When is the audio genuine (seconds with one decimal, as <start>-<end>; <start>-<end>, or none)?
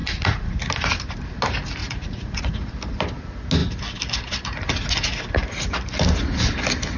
0.6-1.8; 2.7-7.0